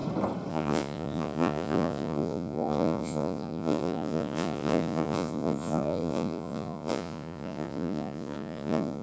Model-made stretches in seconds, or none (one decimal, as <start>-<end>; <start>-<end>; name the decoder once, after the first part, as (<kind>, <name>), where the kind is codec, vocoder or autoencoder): 0.5-9.0 (vocoder, Vocos)